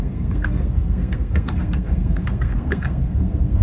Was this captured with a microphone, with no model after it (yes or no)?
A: no